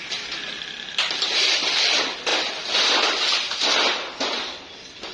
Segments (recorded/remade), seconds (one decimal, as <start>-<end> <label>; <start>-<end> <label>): 0.0-5.1 recorded